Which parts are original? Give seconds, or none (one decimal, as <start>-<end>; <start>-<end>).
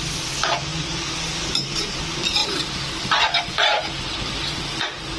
0.0-2.4; 4.6-5.2